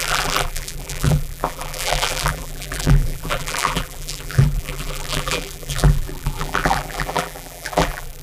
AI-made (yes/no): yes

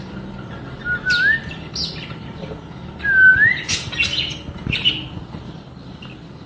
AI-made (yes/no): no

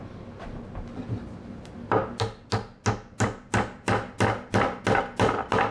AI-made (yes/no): no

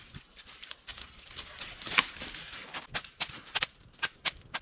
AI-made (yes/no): no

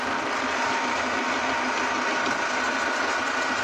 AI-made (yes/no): no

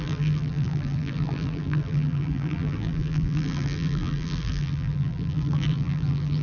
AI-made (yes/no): yes